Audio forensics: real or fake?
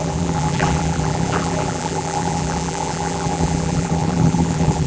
fake